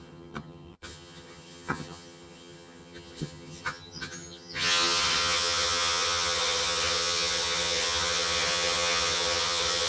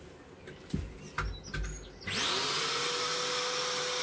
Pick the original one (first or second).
second